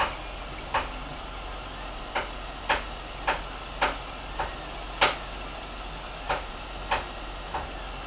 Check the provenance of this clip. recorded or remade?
recorded